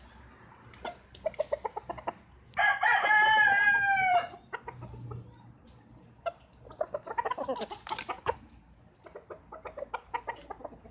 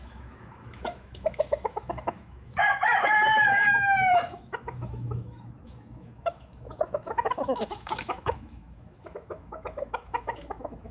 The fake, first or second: second